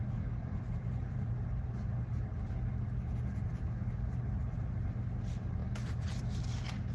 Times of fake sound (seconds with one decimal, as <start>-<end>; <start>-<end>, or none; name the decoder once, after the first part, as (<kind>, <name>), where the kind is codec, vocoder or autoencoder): 0.4-1.3 (vocoder, BigVGAN v2)

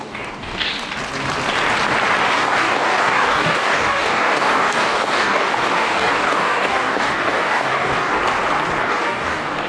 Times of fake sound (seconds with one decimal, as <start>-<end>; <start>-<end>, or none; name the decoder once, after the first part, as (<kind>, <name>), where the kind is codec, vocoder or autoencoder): 0.0-0.7 (codec, DAC); 2.3-8.2; 8.8-9.7

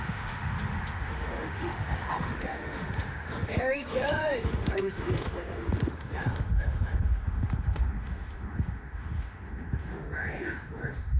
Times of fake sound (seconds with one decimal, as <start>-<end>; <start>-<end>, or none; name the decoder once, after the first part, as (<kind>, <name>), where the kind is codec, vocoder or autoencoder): 0.0-11.2 (autoencoder, DAC-VAE)

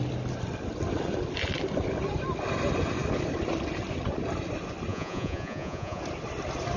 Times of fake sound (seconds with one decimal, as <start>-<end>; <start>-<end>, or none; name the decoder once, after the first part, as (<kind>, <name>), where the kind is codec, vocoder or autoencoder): 4.9-6.0 (vocoder, Vocos)